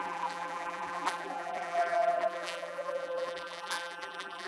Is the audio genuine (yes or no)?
no